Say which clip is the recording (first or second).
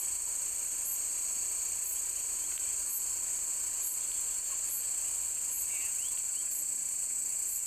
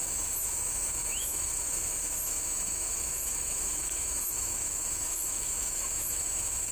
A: first